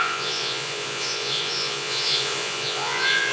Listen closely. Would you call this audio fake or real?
fake